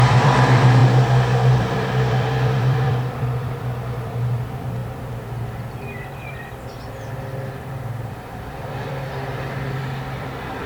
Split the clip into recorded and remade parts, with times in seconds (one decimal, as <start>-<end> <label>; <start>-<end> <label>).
0.0-0.8 remade; 0.8-1.6 recorded; 1.6-4.8 remade; 4.8-8.1 recorded; 8.1-10.7 remade